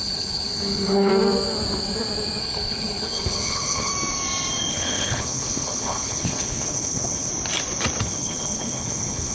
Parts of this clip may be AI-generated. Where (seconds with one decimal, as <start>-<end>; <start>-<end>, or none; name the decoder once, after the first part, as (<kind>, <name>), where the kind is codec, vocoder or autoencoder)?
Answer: 0.0-1.1 (codec, HILCodec); 2.4-3.9; 4.7-7.3; 8.0-9.3